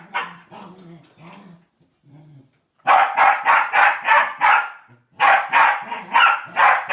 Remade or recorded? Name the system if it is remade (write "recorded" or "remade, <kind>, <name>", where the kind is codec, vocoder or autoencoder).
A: recorded